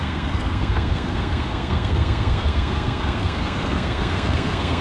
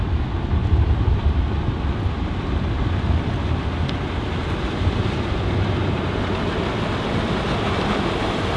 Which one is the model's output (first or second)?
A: first